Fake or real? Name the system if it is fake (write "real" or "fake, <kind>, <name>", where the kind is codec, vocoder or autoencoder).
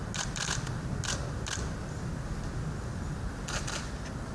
real